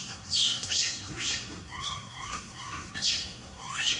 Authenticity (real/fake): fake